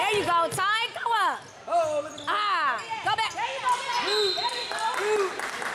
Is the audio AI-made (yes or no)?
no